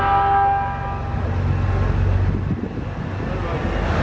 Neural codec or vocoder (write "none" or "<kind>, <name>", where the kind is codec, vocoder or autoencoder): none